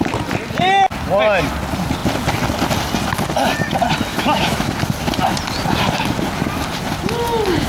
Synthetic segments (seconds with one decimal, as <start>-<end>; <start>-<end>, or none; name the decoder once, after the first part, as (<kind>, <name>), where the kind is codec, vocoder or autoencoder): 4.1-4.7 (autoencoder, DAC-VAE)